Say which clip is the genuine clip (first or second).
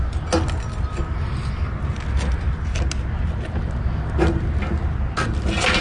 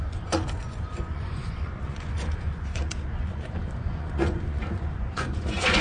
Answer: first